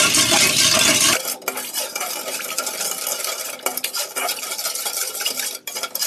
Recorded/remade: recorded